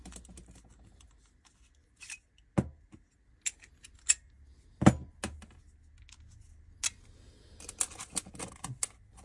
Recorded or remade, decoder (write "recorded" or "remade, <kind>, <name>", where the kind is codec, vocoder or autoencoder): recorded